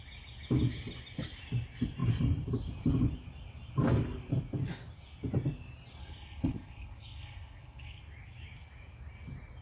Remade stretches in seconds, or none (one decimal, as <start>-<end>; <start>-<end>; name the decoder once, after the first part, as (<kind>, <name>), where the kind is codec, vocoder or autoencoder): 6.0-8.0 (codec, SNAC)